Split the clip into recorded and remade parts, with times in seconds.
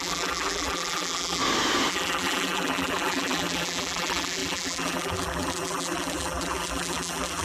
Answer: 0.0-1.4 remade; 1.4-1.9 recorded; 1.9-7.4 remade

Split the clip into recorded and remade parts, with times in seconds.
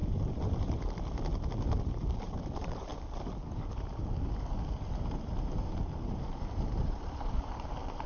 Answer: 0.0-2.1 recorded; 2.1-2.9 remade; 2.9-5.0 recorded; 5.0-8.1 remade